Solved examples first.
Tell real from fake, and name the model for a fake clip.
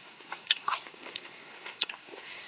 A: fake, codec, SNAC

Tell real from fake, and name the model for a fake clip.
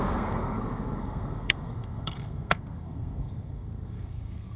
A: fake, codec, SNAC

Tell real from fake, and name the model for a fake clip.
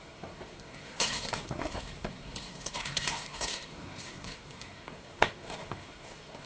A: fake, codec, SNAC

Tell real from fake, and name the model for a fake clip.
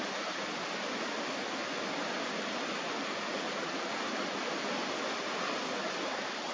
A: real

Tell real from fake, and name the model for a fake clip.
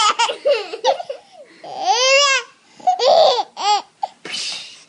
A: real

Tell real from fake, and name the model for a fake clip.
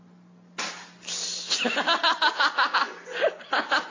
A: real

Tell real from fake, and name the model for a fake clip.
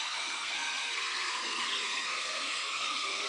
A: fake, codec, SNAC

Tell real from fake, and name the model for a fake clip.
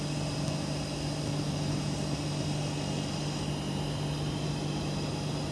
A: real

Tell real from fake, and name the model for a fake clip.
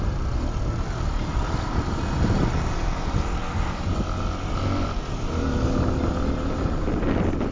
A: real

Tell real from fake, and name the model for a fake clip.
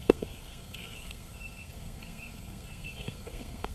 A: fake, codec, SNAC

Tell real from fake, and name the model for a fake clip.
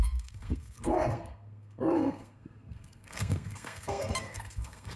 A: fake, codec, SNAC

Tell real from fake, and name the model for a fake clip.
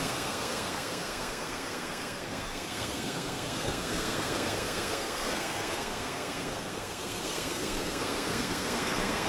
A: fake, codec, SNAC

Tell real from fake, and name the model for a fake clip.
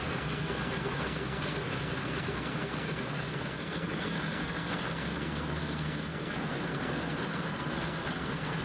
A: fake, codec, SNAC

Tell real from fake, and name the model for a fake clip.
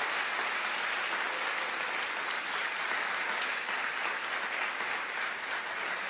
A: real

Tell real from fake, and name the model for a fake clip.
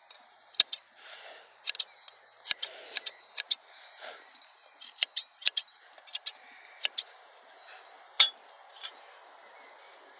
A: real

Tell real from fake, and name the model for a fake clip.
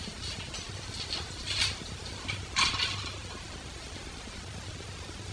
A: real